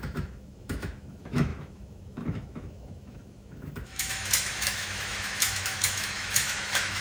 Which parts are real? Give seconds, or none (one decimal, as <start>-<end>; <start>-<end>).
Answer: none